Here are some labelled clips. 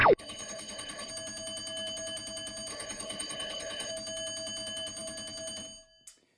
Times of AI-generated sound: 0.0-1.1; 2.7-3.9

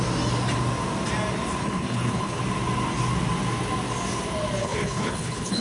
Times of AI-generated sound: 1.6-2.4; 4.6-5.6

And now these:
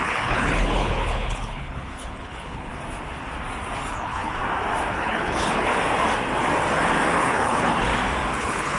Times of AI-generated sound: 0.0-2.7; 3.9-4.4; 4.9-5.7; 7.2-7.9; 8.4-8.8

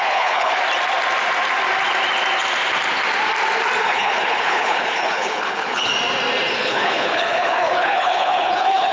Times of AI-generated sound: 0.0-0.6; 3.8-5.9; 6.5-8.9

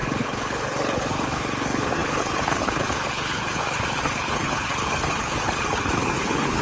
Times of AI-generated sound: 0.0-6.6

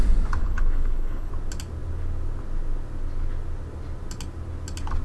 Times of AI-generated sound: 0.4-1.3

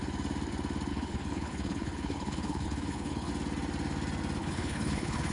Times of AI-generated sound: 0.9-3.3; 4.4-5.3